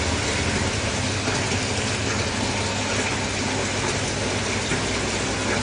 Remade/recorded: recorded